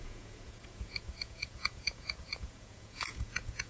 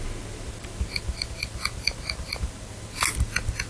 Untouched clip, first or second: second